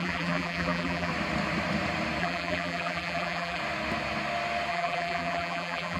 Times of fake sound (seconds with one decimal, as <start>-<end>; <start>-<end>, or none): 0.0-1.1; 2.2-3.6; 4.7-6.0